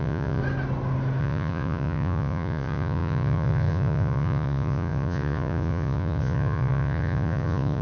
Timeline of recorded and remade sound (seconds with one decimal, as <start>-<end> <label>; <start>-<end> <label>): 0.0-0.4 remade; 0.4-1.2 recorded; 1.2-7.8 remade